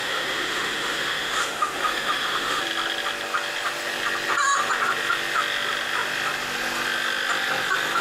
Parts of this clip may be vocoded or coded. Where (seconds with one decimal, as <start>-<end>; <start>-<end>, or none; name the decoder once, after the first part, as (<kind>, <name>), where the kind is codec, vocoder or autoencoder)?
0.0-2.6 (autoencoder, DAC-VAE)